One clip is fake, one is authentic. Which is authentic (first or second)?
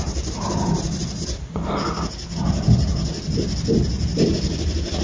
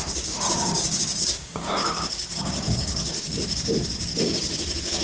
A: first